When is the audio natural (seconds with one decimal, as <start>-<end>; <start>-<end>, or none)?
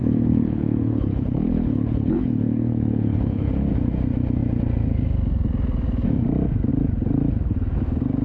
3.7-8.2